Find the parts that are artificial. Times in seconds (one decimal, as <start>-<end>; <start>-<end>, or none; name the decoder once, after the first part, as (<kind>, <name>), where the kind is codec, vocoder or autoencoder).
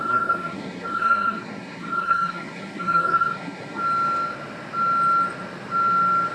0.0-3.8 (codec, SNAC)